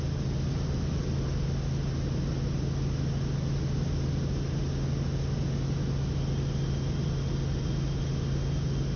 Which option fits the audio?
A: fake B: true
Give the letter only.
B